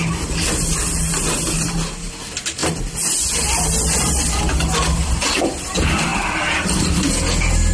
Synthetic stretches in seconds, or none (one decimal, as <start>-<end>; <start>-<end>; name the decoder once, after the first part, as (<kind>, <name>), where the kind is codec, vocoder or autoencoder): none